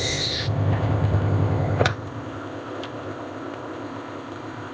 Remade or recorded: remade